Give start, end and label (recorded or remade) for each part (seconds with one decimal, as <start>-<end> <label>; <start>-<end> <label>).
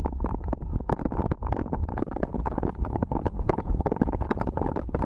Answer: 0.0-1.9 recorded; 1.9-5.0 remade